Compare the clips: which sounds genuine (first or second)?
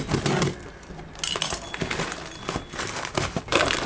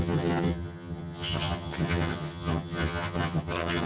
first